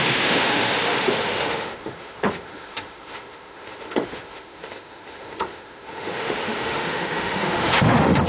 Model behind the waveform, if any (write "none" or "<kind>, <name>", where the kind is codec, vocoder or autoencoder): autoencoder, DAC-VAE